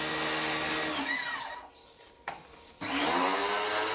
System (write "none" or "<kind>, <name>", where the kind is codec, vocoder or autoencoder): none